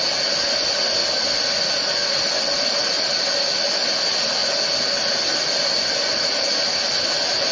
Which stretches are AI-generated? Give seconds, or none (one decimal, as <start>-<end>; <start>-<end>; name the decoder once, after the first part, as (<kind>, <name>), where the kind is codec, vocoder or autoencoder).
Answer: none